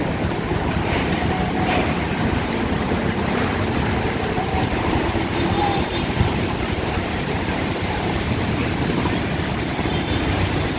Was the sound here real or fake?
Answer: fake